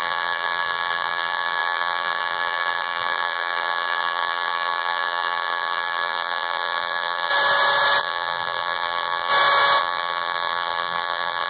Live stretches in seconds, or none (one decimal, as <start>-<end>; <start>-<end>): 7.3-8.0; 9.3-9.8